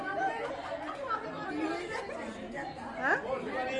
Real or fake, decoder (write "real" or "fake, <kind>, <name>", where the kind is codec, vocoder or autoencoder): real